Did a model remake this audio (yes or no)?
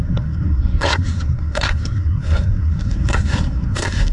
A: yes